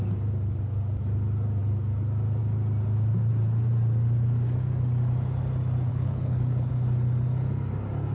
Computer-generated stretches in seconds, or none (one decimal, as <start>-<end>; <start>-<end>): 5.9-6.7

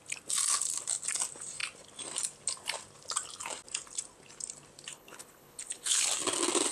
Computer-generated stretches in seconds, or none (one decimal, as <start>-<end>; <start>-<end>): 4.9-6.0